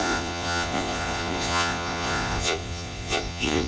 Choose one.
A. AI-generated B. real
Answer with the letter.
A